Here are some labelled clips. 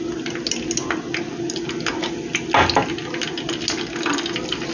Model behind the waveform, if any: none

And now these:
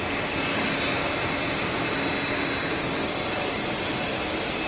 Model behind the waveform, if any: none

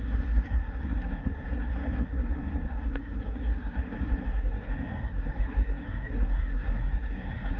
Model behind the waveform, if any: codec, SNAC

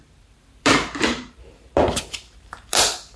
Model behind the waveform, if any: vocoder, BigVGAN v2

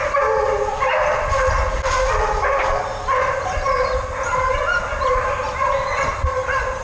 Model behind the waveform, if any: none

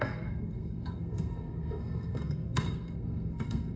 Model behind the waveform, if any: codec, SNAC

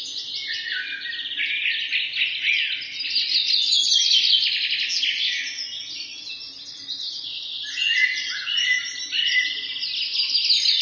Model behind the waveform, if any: none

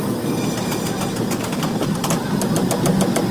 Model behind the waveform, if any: none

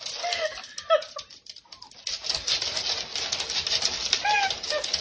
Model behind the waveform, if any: none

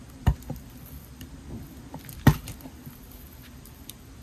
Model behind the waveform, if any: none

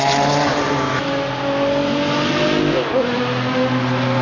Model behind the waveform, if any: none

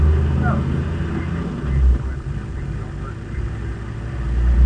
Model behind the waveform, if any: none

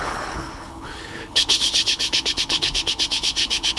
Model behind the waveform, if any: codec, HILCodec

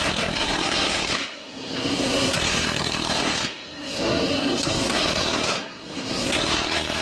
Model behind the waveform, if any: codec, SNAC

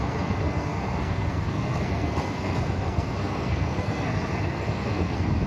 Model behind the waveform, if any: codec, SNAC